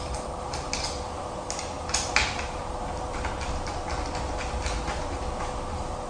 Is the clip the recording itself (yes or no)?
yes